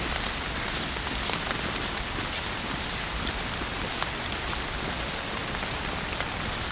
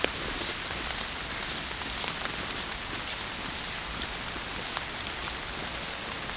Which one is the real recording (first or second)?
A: second